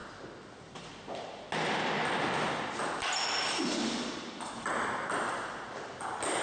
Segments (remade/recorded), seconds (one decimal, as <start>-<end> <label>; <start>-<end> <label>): 0.0-6.4 recorded